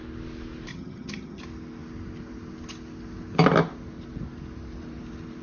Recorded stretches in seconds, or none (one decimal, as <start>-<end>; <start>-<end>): 0.0-0.7; 1.4-5.4